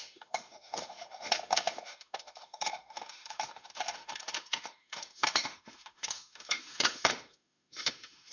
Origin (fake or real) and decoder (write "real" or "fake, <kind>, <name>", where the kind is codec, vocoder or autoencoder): fake, autoencoder, DAC-VAE